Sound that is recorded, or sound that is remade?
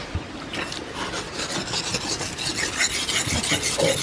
recorded